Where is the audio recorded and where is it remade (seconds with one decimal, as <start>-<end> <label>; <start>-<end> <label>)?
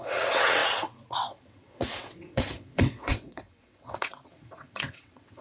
0.0-5.4 remade